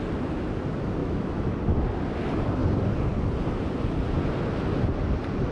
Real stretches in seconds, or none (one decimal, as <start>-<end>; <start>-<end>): 0.0-1.0; 1.5-5.5